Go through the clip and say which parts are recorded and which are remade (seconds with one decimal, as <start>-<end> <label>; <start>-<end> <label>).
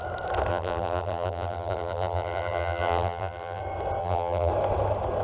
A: 0.0-0.5 recorded; 0.5-3.6 remade; 3.6-4.0 recorded; 4.0-4.5 remade; 4.5-5.2 recorded